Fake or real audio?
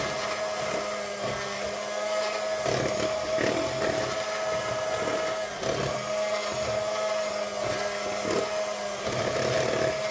real